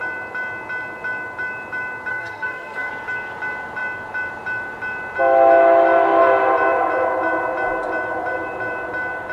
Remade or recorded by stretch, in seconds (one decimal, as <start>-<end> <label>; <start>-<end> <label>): 0.0-2.1 recorded; 2.1-2.9 remade; 2.9-9.3 recorded